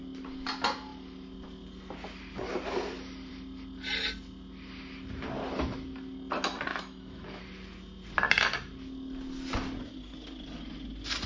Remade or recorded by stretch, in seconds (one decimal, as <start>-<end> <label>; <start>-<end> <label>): 0.0-6.7 recorded; 6.7-7.4 remade; 7.4-11.3 recorded